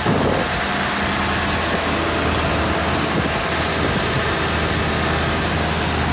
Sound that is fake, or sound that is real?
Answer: real